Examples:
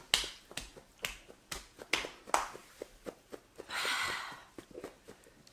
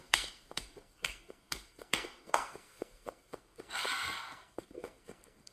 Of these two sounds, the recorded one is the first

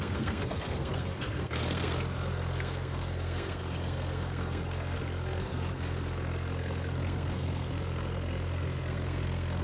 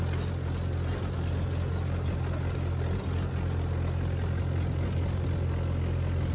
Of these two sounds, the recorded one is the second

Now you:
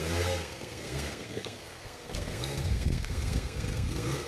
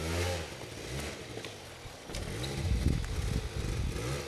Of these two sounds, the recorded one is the second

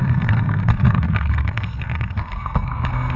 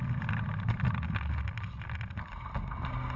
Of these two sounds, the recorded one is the second